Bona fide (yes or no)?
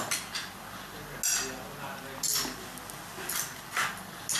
yes